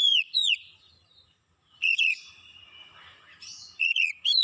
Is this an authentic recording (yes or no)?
no